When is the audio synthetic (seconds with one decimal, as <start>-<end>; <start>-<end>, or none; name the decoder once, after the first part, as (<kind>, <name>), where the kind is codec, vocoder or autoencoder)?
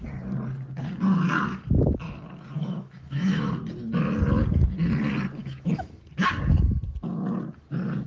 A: 2.6-3.5 (autoencoder, DAC-VAE); 5.4-6.1